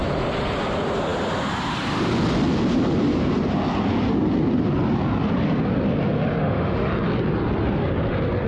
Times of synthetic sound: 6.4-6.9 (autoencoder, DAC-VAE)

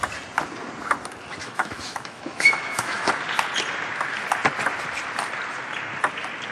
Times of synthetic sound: 1.4-3.1 (autoencoder, DAC-VAE)

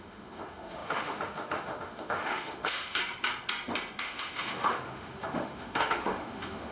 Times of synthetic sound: 0.0-3.0 (autoencoder, DAC-VAE); 4.0-6.7

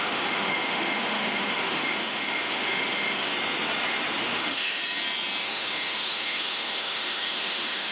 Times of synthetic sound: 0.0-3.3 (autoencoder, DAC-VAE); 4.2-4.8; 5.4-7.9

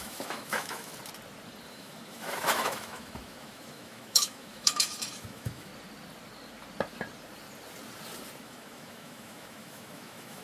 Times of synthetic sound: 0.0-0.9 (autoencoder, DAC-VAE); 1.7-5.7; 8.4-10.4

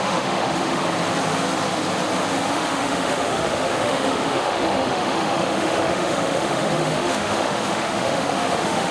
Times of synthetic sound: 0.0-0.8 (autoencoder, DAC-VAE); 2.5-8.9